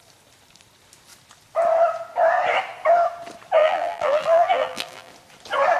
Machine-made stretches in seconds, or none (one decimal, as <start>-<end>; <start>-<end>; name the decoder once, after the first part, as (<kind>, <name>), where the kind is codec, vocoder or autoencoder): 3.6-5.1 (vocoder, BigVGAN v2)